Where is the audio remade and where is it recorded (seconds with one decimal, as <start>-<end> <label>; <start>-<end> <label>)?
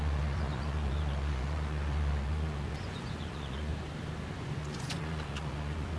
0.0-3.7 remade; 3.7-4.3 recorded; 4.3-6.0 remade